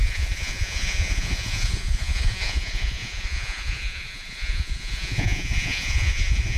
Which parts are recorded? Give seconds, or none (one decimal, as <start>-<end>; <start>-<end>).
none